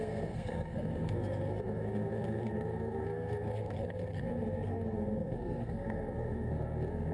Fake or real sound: fake